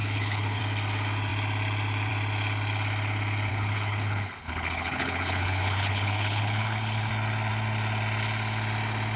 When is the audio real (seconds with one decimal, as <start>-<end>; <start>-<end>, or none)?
0.6-3.5; 7.1-9.2